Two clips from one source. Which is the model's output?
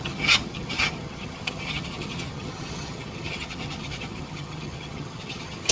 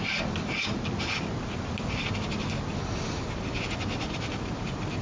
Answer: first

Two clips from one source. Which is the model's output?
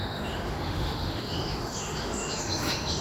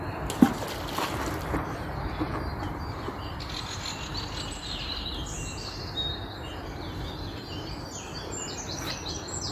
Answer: first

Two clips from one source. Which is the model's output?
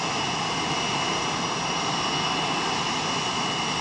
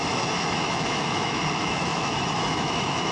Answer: second